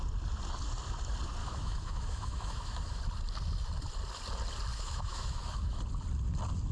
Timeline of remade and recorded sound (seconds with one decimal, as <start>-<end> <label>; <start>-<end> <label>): 0.0-1.4 recorded; 1.4-3.0 remade; 3.0-4.7 recorded; 4.7-5.8 remade; 5.8-6.7 recorded